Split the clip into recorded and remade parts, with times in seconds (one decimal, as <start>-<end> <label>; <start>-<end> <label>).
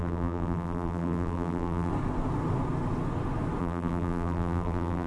0.0-1.9 remade; 1.9-3.6 recorded; 3.6-5.1 remade